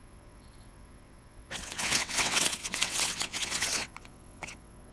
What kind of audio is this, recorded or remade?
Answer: remade